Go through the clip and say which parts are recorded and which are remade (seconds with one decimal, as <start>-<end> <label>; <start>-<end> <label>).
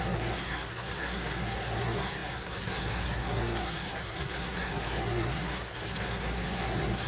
0.0-7.1 remade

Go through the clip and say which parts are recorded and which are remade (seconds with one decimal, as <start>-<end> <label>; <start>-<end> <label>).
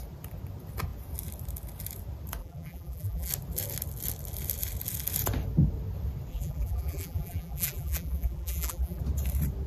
0.0-2.4 recorded; 2.4-3.3 remade; 3.3-6.3 recorded; 6.3-9.0 remade; 9.0-9.7 recorded